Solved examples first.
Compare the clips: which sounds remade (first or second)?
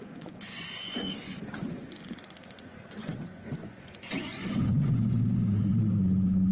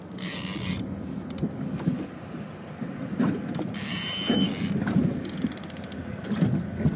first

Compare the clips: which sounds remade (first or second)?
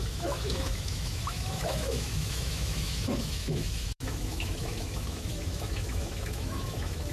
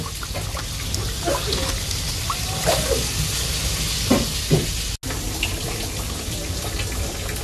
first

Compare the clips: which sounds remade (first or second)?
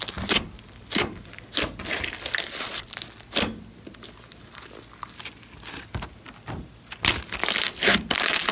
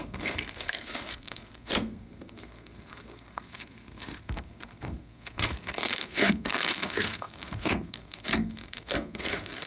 second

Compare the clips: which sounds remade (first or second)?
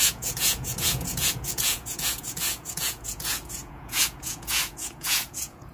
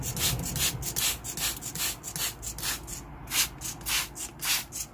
first